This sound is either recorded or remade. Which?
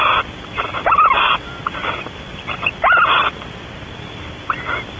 recorded